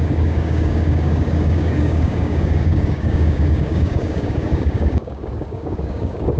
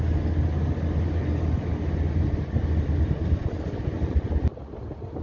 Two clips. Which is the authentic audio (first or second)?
second